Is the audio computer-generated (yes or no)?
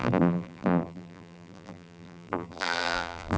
yes